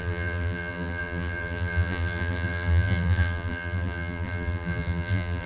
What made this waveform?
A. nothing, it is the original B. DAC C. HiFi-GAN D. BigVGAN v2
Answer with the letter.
D